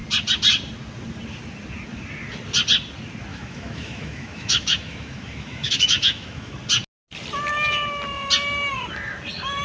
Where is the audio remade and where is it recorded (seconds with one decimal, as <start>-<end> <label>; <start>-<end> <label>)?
0.0-3.3 recorded; 3.3-6.5 remade; 6.5-9.6 recorded